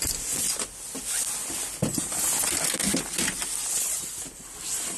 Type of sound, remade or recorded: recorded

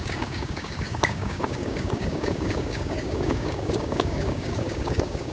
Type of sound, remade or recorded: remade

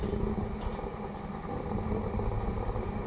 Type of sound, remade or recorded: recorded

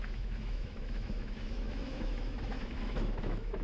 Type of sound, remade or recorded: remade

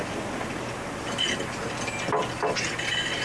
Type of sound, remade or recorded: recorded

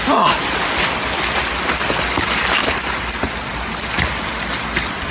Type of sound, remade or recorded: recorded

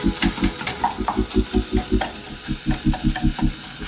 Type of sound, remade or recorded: recorded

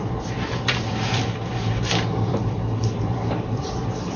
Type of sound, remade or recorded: remade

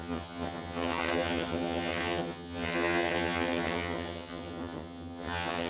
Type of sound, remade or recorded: remade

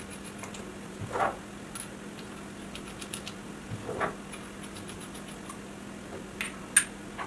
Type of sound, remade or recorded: recorded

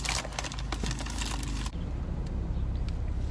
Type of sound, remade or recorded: recorded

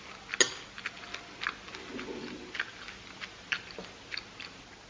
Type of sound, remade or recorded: recorded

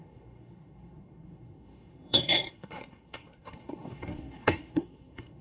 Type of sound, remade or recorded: remade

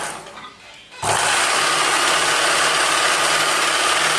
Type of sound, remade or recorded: recorded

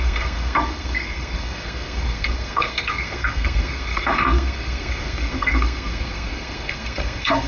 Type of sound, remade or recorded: remade